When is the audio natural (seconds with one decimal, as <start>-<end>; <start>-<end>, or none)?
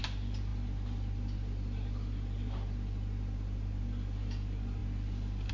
0.0-5.5